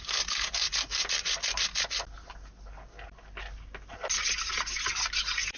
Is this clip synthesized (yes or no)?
no